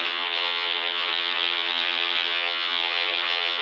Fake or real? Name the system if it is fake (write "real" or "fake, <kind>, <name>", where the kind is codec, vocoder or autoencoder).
fake, vocoder, HiFi-GAN